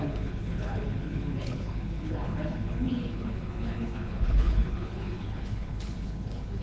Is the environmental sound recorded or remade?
remade